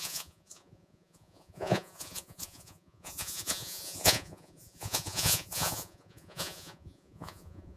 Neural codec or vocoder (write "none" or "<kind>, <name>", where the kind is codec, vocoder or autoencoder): vocoder, Vocos